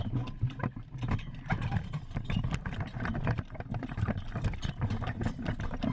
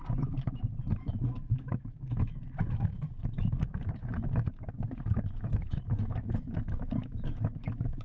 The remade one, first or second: second